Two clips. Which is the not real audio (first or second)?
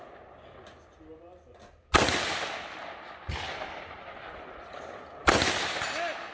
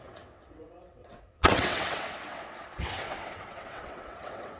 second